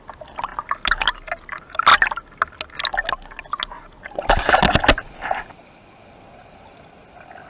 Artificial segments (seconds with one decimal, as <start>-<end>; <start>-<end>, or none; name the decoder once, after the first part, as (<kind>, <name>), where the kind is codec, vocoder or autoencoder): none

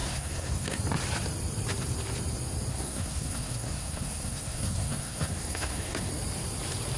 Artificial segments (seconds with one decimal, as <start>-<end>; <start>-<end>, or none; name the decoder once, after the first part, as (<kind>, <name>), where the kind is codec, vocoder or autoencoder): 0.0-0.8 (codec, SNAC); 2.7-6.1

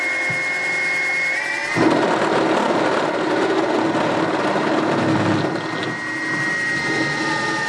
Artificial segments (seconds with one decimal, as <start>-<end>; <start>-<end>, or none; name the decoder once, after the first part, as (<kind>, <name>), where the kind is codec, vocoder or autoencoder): none

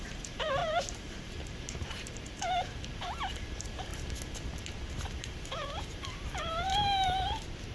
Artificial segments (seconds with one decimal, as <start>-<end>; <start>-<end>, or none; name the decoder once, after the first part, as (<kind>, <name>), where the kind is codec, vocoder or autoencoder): 0.0-3.9 (vocoder, BigVGAN v2); 4.9-7.7

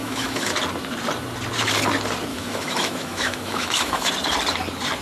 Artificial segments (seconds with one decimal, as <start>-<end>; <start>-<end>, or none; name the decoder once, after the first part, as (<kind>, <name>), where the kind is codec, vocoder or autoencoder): 0.0-0.5 (autoencoder, DAC-VAE); 2.3-4.1

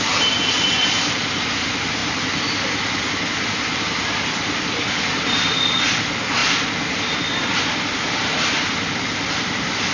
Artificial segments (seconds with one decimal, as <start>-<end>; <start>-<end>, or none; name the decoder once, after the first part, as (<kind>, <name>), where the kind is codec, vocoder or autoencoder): none

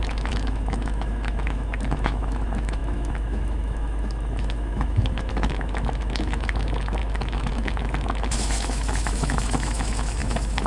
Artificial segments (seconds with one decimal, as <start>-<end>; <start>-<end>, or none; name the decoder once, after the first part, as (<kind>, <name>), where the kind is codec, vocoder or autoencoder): 0.0-10.7 (autoencoder, DAC-VAE)

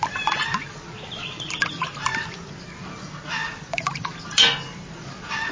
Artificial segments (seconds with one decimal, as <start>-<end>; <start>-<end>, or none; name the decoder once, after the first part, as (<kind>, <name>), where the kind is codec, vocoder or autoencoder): none